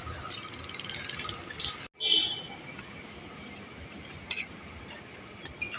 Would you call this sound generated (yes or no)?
no